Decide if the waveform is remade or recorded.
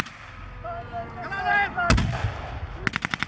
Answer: recorded